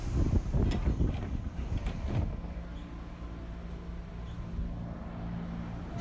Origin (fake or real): real